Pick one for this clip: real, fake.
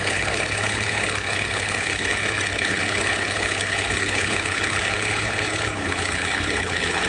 fake